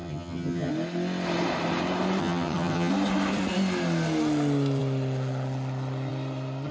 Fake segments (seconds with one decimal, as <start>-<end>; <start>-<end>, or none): 0.0-0.7; 2.2-2.9